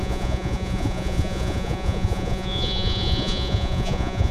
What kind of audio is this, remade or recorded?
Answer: remade